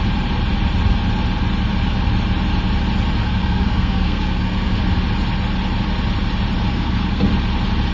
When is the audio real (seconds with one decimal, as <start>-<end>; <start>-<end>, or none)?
0.0-3.2; 4.8-6.7; 7.3-7.9